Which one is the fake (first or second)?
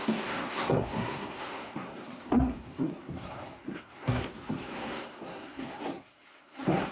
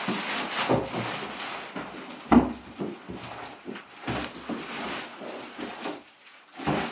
first